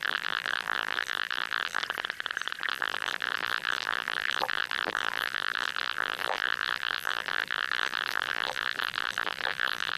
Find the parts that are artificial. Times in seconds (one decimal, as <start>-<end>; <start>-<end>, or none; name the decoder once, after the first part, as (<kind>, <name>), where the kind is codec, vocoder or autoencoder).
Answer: 0.0-1.8 (vocoder, BigVGAN v2); 2.7-10.0